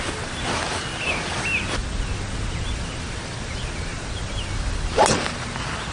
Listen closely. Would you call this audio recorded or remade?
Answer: recorded